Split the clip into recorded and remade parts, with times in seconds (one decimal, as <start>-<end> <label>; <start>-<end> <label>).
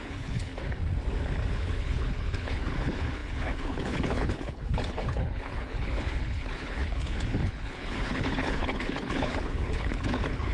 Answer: 0.0-0.5 remade; 0.5-1.5 recorded; 1.5-10.5 remade